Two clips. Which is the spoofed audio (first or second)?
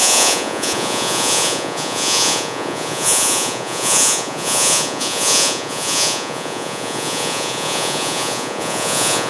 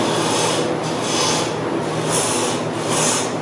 first